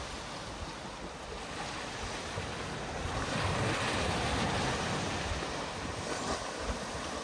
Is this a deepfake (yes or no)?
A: no